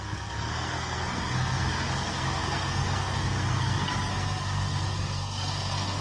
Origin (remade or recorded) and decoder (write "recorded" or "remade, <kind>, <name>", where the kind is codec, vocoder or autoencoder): remade, codec, SNAC